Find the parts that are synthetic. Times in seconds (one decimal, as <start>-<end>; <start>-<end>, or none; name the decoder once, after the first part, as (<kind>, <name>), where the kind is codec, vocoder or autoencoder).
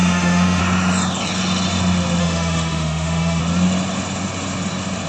0.0-0.6 (autoencoder, DAC-VAE); 2.2-3.4